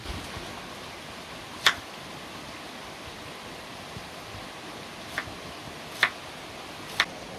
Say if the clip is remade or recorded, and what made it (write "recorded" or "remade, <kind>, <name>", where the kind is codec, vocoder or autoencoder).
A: recorded